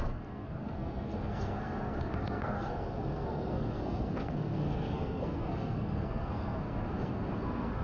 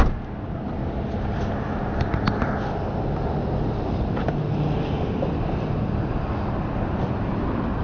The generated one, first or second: first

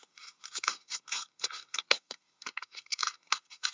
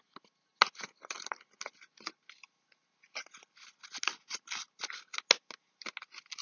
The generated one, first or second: first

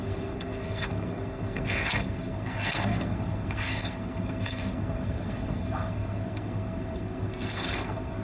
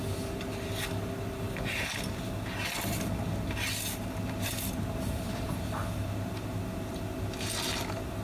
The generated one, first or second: first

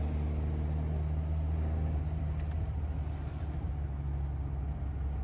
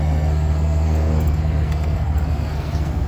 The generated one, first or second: second